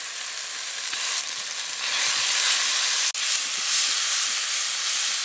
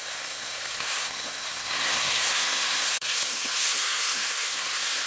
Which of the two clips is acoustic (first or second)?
first